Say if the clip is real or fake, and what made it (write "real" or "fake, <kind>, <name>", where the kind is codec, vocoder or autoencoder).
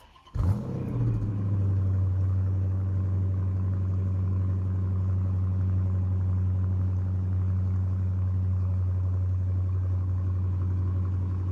fake, codec, DAC